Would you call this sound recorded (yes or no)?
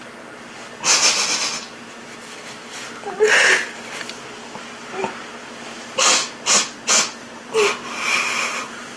yes